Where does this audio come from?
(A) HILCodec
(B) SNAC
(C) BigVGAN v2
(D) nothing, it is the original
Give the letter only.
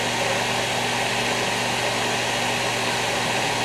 D